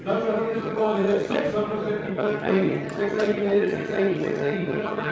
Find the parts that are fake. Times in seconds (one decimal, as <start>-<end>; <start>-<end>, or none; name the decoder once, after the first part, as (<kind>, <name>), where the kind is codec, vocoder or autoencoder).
0.6-1.4 (vocoder, HiFi-GAN); 2.0-5.1